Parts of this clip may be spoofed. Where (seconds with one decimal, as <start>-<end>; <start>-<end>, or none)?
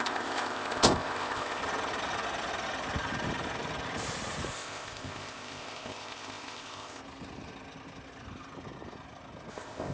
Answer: 0.0-1.6; 4.5-7.0; 9.5-9.9